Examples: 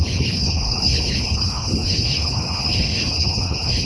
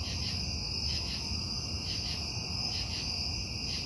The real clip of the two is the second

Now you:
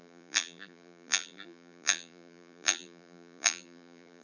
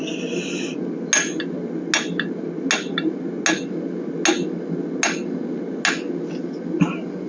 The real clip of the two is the second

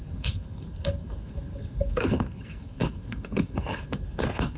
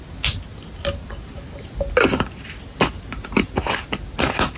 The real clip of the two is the second